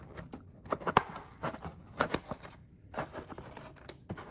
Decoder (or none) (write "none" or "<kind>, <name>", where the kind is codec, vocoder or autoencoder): none